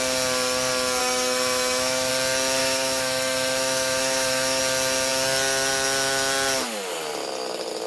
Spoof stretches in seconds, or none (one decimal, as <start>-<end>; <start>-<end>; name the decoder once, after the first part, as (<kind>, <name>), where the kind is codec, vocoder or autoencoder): 1.0-2.1 (autoencoder, DAC-VAE); 2.6-4.6